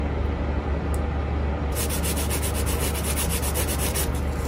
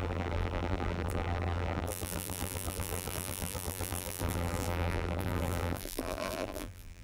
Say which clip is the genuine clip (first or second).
first